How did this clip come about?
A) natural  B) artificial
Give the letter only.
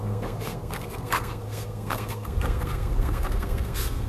B